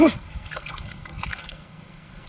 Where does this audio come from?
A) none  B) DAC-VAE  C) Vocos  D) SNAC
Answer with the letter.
D